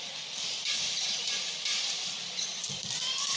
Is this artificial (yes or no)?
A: yes